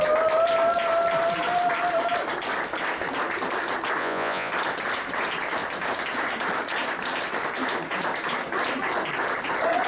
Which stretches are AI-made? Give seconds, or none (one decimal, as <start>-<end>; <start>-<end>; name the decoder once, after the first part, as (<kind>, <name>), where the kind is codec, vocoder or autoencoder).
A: 4.0-4.5 (vocoder, Vocos)